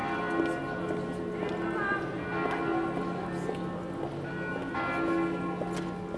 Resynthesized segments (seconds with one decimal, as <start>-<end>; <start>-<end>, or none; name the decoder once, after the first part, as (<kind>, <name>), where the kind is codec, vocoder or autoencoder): none